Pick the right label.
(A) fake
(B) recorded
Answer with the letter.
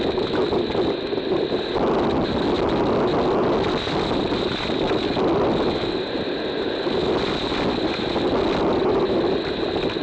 B